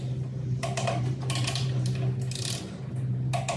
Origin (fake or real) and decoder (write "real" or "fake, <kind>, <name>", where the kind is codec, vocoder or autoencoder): real